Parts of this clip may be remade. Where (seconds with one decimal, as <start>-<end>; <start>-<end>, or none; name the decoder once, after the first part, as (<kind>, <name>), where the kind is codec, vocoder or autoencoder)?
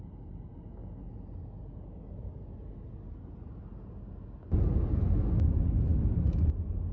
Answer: none